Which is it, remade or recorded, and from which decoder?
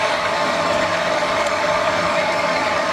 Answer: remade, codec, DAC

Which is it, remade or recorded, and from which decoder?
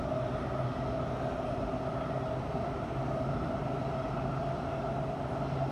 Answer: recorded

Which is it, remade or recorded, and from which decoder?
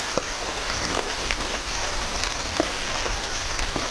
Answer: remade, codec, DAC